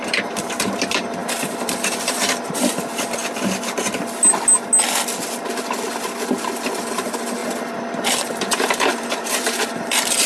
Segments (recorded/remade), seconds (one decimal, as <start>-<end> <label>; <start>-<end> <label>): 0.0-3.2 remade; 3.2-6.8 recorded; 6.8-7.4 remade; 7.4-8.1 recorded; 8.1-10.3 remade